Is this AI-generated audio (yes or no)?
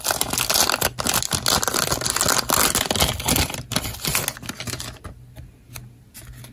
no